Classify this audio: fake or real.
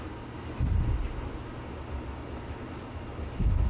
real